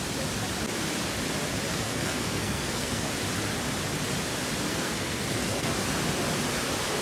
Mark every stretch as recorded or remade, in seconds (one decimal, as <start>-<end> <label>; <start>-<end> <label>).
0.0-1.7 recorded; 1.7-3.1 remade; 3.1-4.7 recorded; 4.7-5.7 remade; 5.7-7.0 recorded